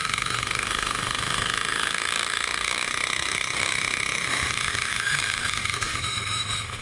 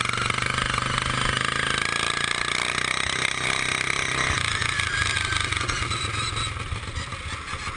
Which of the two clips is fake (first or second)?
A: first